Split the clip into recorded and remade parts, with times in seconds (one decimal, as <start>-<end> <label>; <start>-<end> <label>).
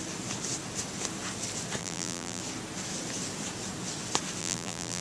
0.0-1.8 recorded; 1.8-2.4 remade; 2.4-4.4 recorded; 4.4-5.0 remade